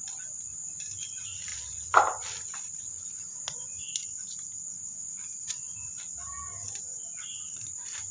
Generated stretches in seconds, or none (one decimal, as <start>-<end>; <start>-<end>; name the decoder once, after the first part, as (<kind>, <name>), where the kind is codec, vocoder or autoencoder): 0.0-1.5 (vocoder, BigVGAN v2); 2.5-3.3; 7.5-8.1